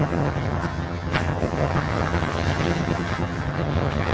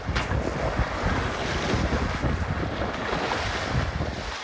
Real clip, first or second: second